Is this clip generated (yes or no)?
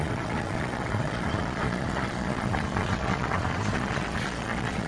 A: yes